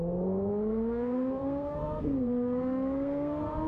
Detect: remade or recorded remade